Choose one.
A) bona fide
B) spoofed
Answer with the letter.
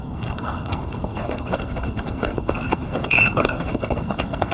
B